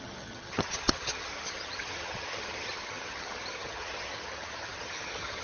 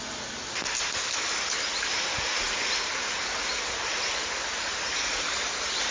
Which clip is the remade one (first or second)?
first